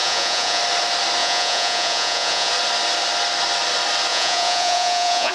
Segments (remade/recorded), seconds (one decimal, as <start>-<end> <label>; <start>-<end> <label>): 0.0-0.6 remade; 0.6-1.2 recorded; 1.2-2.5 remade; 2.5-4.1 recorded; 4.1-5.3 remade